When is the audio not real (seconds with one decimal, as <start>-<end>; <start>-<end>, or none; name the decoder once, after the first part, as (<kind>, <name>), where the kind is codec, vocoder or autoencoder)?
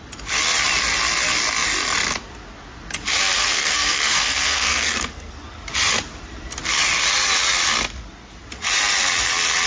3.4-5.3 (codec, SNAC)